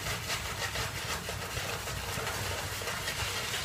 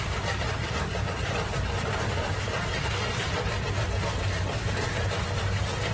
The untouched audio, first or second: first